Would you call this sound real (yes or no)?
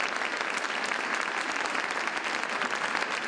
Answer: yes